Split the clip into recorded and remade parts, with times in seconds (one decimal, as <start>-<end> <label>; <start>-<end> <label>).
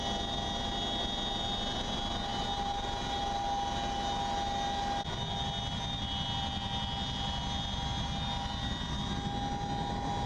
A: 0.0-10.3 recorded